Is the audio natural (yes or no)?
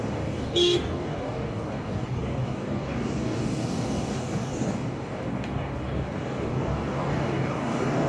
no